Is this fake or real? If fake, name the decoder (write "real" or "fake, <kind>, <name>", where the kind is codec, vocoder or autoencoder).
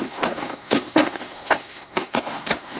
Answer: fake, codec, SNAC